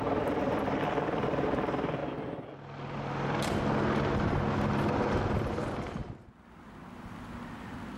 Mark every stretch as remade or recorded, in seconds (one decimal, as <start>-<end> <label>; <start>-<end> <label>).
0.0-2.0 remade; 2.0-5.5 recorded; 5.5-6.0 remade; 6.0-7.5 recorded; 7.5-8.0 remade